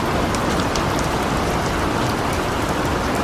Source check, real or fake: real